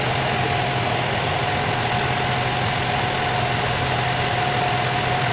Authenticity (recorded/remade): recorded